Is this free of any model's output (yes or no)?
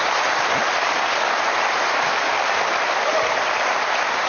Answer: yes